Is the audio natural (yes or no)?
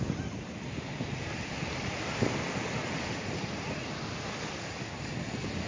yes